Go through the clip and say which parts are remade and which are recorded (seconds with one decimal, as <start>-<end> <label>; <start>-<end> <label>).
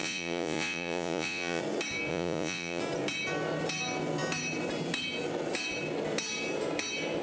0.0-1.6 remade; 1.6-2.1 recorded; 2.1-2.8 remade; 2.8-7.2 recorded